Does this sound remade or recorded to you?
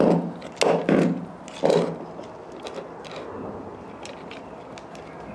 recorded